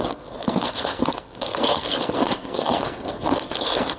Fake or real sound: fake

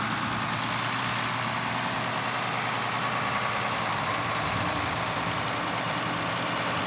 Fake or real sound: real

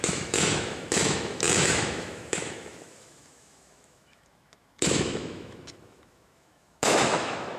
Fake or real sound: fake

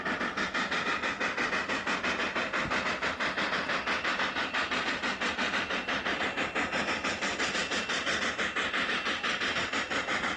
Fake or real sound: real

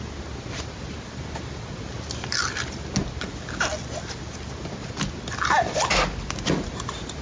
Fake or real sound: real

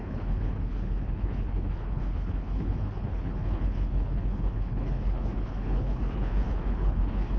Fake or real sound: fake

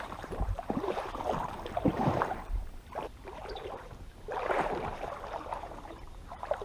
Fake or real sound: fake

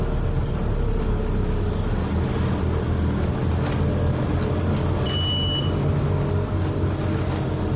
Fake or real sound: real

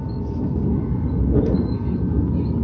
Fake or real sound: real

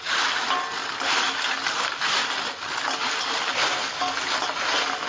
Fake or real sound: real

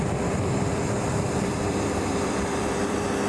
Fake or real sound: fake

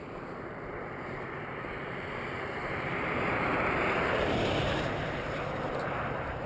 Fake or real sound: fake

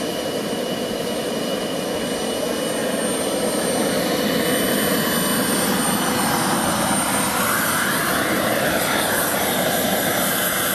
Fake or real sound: real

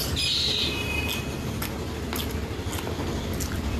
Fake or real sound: real